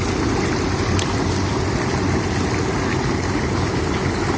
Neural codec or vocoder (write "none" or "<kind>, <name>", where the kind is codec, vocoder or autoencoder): none